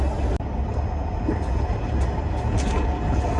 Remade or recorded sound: recorded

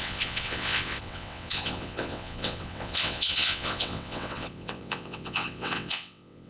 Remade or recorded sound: remade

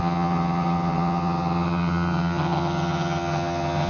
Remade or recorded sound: remade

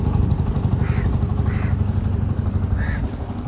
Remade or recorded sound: recorded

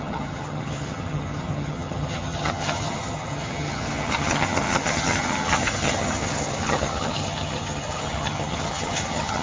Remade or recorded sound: remade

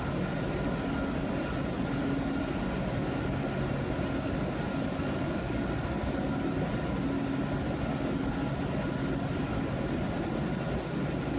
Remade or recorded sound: recorded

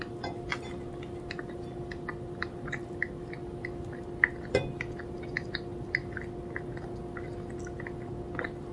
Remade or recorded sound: recorded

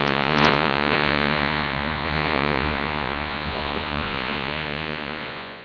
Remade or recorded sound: remade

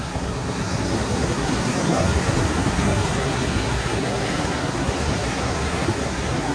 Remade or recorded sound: remade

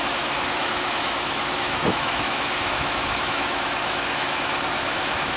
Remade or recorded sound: remade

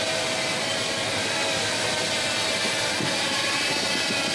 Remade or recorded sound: recorded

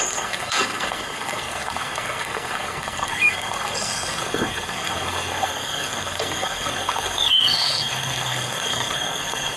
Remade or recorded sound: remade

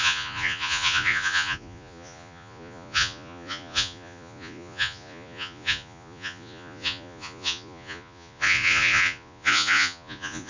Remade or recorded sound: remade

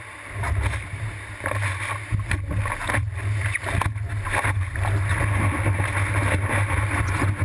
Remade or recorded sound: recorded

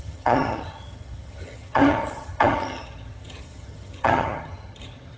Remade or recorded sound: remade